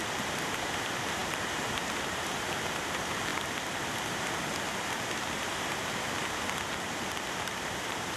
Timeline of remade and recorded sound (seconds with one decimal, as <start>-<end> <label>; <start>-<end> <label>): 0.0-3.3 remade; 3.3-6.9 recorded; 6.9-8.2 remade